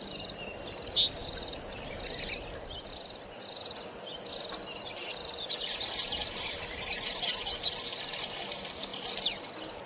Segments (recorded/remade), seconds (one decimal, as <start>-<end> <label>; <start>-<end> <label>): 0.0-9.8 recorded